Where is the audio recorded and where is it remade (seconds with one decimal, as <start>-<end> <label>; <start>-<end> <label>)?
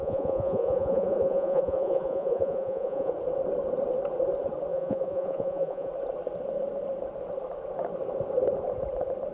0.0-3.1 remade; 3.1-4.7 recorded; 4.7-5.9 remade; 5.9-9.3 recorded